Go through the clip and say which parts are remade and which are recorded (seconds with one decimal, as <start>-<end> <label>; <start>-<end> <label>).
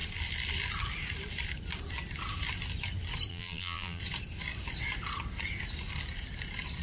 0.0-3.3 recorded; 3.3-4.0 remade; 4.0-6.8 recorded